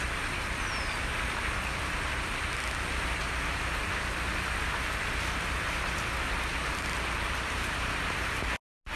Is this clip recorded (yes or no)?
yes